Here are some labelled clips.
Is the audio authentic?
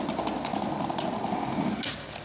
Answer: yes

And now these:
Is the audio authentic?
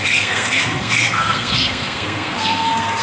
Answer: no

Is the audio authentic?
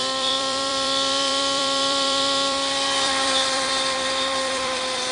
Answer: no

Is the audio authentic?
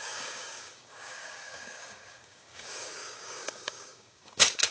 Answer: no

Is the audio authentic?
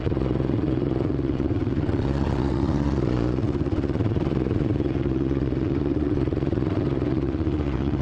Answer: no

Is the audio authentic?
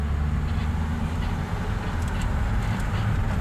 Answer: yes